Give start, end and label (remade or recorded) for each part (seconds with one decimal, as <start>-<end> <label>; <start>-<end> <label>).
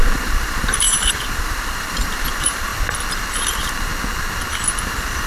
0.0-2.7 remade; 2.7-3.5 recorded; 3.5-3.9 remade; 3.9-4.8 recorded; 4.8-5.3 remade